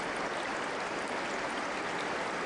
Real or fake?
real